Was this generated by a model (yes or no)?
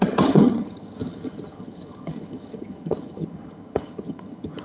yes